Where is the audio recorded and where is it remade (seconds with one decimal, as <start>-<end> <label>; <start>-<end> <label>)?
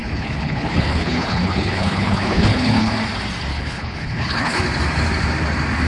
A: 0.0-2.9 remade; 2.9-3.5 recorded; 3.5-4.6 remade; 4.6-5.9 recorded